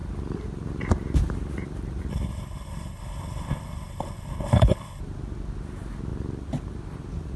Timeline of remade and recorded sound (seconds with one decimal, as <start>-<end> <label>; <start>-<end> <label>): 0.0-2.1 recorded; 2.1-5.0 remade; 5.0-7.4 recorded